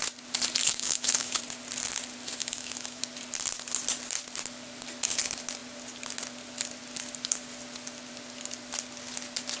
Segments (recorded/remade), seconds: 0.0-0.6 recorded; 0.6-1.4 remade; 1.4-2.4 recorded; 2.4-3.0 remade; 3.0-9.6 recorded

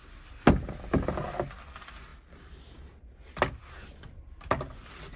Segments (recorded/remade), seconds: 0.0-5.2 recorded

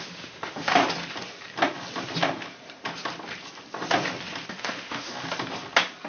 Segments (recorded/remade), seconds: 0.0-0.8 remade; 0.8-4.5 recorded; 4.5-5.1 remade; 5.1-6.1 recorded

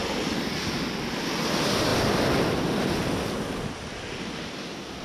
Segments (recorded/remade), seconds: 0.0-5.0 recorded

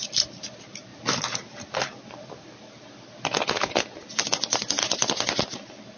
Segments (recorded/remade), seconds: 0.0-6.0 recorded

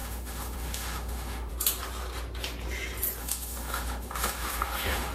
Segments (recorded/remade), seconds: 0.0-1.5 remade; 1.5-3.2 recorded; 3.2-5.1 remade

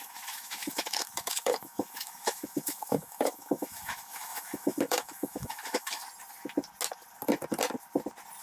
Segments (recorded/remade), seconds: 0.0-6.0 remade; 6.0-8.4 recorded

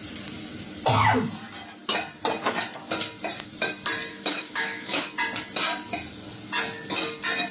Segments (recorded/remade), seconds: 0.0-4.1 recorded; 4.1-5.1 remade; 5.1-7.5 recorded